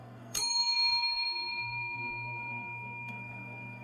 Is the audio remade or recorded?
remade